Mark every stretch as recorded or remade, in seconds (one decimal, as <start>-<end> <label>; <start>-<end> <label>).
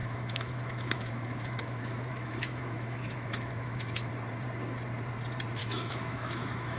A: 0.0-4.1 remade; 4.1-5.6 recorded; 5.6-6.8 remade